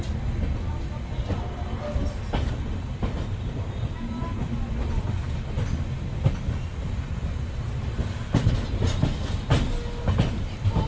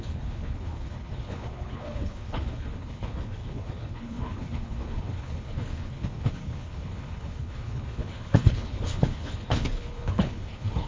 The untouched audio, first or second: first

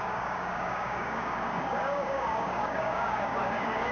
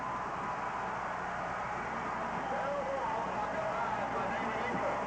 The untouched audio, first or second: second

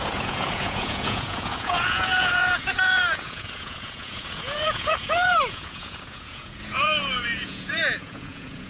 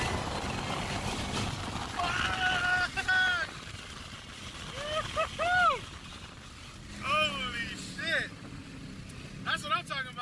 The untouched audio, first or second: second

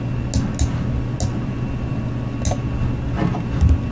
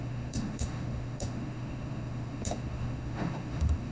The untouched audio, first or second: first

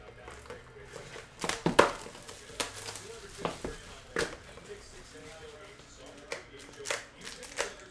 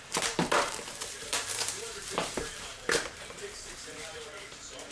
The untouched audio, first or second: first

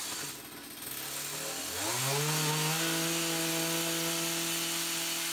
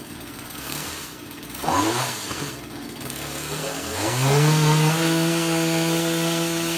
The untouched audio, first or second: first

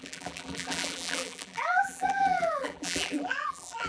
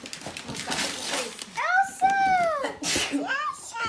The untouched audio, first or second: second